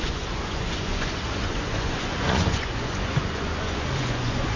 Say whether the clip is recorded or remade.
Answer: remade